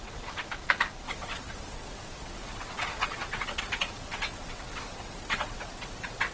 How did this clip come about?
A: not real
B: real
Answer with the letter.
A